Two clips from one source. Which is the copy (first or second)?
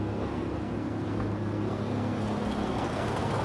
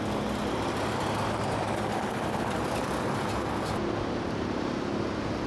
first